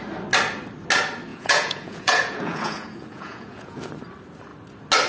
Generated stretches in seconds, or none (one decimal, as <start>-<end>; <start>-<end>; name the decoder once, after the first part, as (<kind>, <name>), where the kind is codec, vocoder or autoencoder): 1.3-3.8 (vocoder, Vocos)

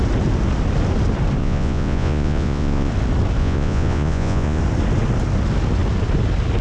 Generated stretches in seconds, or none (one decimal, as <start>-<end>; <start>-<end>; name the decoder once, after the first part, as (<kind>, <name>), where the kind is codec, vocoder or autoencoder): 1.4-2.9 (vocoder, Vocos); 3.4-4.6

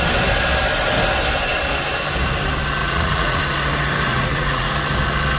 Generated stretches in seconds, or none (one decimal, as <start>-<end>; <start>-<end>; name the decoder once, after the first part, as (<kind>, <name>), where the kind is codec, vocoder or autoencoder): 2.8-3.4 (vocoder, Vocos); 4.1-4.7

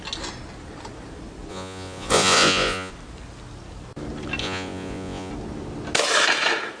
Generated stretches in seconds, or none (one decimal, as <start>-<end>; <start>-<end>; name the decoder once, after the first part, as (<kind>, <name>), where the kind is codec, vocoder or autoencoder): 1.5-2.9 (vocoder, Vocos); 4.4-5.3